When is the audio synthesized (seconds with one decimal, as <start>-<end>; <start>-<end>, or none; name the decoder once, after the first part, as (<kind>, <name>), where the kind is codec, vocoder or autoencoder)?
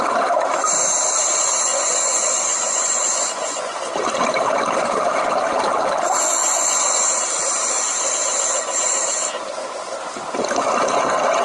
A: 1.7-3.9 (vocoder, Vocos); 6.4-7.1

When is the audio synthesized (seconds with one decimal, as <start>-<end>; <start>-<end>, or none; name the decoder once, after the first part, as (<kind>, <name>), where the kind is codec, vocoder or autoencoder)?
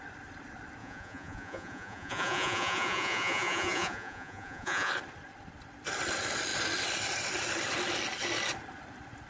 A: 0.8-4.9 (vocoder, Vocos)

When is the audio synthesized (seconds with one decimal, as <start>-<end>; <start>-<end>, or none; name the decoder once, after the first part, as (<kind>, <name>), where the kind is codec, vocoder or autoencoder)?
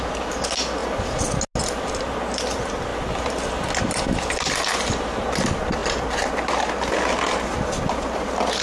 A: none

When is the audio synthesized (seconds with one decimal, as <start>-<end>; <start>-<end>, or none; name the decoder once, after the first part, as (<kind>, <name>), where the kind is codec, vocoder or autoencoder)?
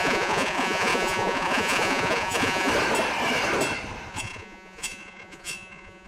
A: 0.0-2.7 (vocoder, Vocos); 4.1-6.1